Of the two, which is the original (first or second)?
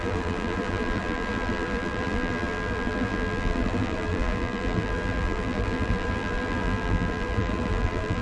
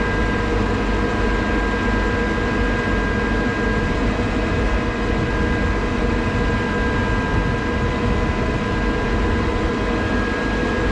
second